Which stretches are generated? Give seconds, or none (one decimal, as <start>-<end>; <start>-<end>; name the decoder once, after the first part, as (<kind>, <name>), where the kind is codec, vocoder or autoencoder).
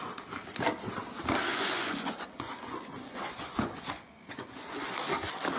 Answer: 1.5-4.9 (vocoder, Vocos)